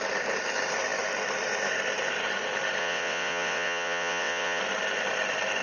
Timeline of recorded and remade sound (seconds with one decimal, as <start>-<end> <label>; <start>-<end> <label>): 0.0-2.8 recorded; 2.8-4.6 remade; 4.6-5.6 recorded